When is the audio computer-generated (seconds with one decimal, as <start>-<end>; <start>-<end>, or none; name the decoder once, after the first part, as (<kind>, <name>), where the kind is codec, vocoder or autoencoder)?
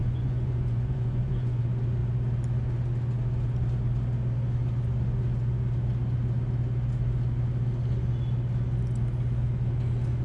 0.0-1.6 (vocoder, Vocos)